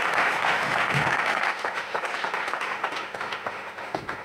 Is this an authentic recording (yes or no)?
no